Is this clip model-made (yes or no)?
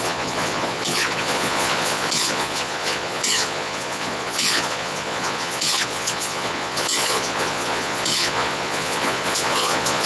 yes